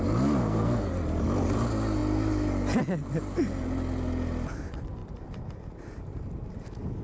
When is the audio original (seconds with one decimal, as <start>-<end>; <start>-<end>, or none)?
0.0-0.4; 0.9-7.0

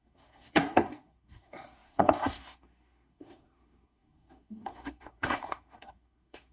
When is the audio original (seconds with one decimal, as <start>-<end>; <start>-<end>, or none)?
none

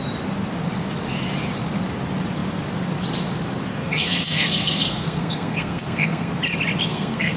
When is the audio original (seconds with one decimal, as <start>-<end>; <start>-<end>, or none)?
0.0-3.7; 6.3-6.9

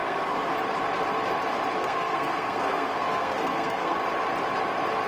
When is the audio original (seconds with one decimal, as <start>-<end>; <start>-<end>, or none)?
0.5-1.8; 4.0-5.1

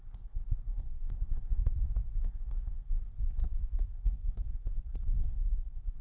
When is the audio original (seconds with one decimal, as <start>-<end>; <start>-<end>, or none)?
3.4-3.9

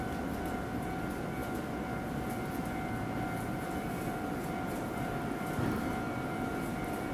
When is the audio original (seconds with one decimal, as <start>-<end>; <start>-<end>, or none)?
0.0-7.1

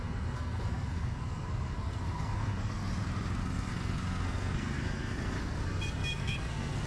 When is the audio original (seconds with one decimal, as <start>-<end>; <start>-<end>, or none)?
2.8-3.4